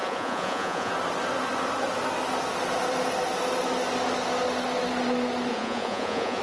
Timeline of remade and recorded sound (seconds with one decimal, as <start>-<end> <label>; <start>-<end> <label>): 0.0-0.9 remade; 0.9-5.5 recorded; 5.5-6.4 remade

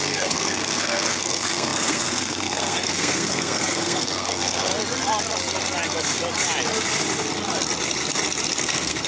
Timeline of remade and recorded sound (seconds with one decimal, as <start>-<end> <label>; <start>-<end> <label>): 0.0-4.7 remade; 4.7-8.6 recorded; 8.6-9.1 remade

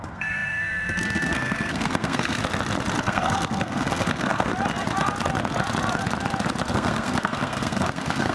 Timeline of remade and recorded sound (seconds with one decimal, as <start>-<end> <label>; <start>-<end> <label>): 0.0-2.4 remade; 2.4-3.0 recorded; 3.0-4.5 remade; 4.5-6.7 recorded; 6.7-8.3 remade

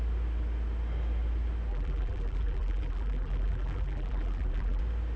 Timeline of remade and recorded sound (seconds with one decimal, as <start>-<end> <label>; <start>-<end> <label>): 0.0-1.7 recorded; 1.7-4.8 remade; 4.8-5.2 recorded